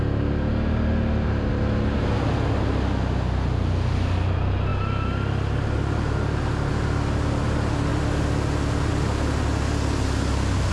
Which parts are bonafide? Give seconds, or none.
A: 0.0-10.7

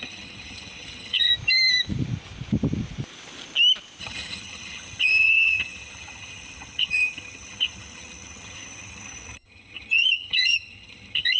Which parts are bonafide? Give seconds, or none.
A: 1.3-4.0

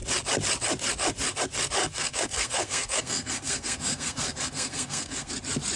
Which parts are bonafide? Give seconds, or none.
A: 0.0-1.8; 5.3-5.8

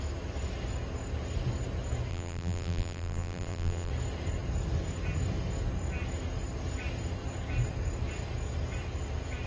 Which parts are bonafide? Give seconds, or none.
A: 0.0-2.1; 3.9-9.5

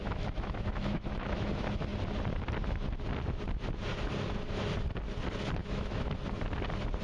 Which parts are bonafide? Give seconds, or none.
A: 1.5-5.6; 6.1-7.0

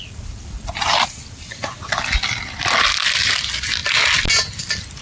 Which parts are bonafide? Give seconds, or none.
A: 0.0-5.0

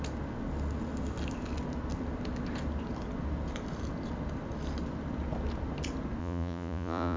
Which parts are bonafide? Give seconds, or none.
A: 0.0-6.2

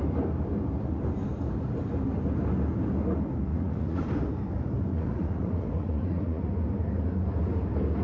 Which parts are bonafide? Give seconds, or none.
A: 0.0-3.5; 4.0-4.9; 6.5-8.0